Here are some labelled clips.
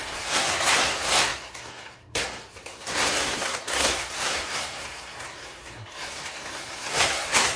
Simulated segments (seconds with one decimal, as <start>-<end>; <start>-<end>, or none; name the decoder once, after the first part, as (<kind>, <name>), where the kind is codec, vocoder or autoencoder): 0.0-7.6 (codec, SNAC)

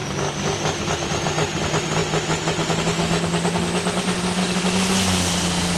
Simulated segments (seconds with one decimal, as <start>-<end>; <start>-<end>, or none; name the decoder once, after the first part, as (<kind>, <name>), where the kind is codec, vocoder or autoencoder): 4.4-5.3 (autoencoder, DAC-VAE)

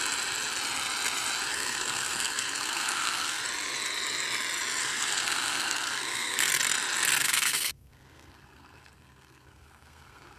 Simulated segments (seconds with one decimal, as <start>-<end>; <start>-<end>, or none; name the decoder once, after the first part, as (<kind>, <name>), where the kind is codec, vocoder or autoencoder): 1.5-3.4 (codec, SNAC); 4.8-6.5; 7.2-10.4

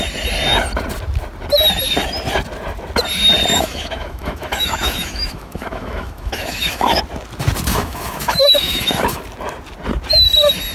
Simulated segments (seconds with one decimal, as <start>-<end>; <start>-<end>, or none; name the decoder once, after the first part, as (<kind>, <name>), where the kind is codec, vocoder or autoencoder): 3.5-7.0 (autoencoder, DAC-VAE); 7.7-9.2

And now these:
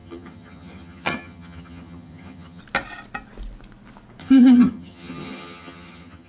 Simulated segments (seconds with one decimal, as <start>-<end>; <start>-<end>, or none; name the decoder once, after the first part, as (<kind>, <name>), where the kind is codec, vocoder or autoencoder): 0.0-2.6 (vocoder, HiFi-GAN); 4.2-6.3

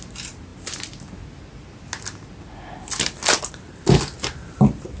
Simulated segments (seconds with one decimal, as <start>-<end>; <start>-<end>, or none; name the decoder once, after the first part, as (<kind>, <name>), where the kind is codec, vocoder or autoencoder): none